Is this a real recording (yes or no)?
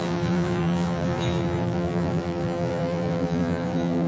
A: no